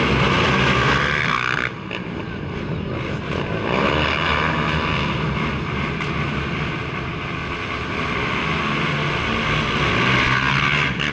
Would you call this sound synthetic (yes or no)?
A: no